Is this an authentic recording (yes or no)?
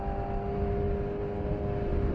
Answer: yes